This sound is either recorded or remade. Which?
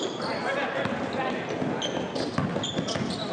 recorded